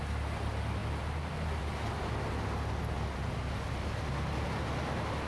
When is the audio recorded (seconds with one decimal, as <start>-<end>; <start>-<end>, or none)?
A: 0.0-5.3